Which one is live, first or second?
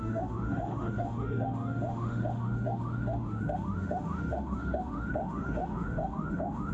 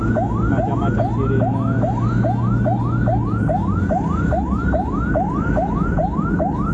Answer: second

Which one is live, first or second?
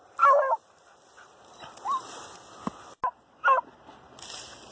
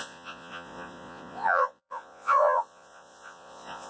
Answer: first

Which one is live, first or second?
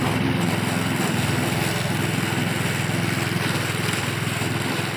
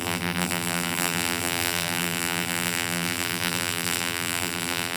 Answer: first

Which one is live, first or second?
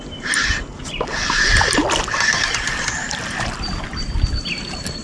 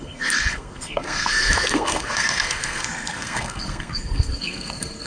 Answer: first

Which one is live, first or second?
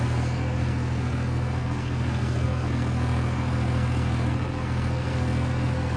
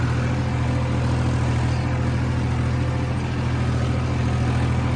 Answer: second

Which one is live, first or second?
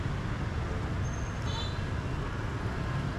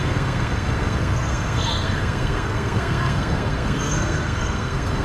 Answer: first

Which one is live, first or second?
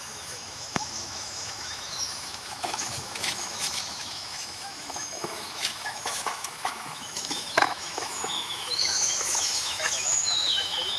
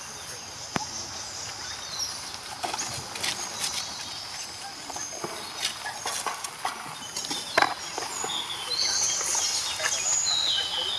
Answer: second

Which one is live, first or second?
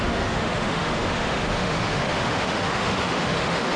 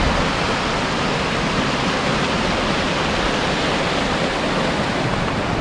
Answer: second